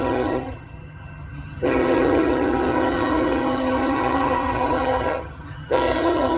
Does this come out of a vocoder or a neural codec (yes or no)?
yes